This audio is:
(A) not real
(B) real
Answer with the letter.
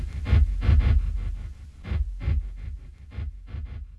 B